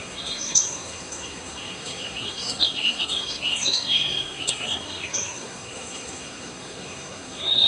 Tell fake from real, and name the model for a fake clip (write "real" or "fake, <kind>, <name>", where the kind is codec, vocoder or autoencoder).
fake, codec, SNAC